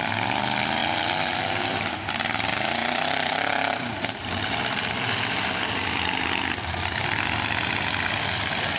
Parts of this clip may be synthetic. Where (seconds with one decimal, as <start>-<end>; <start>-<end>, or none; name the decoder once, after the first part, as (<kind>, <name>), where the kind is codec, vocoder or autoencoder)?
0.0-8.8 (vocoder, BigVGAN v2)